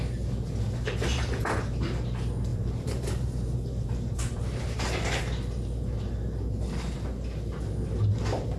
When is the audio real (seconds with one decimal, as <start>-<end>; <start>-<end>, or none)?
0.0-2.5; 5.2-8.6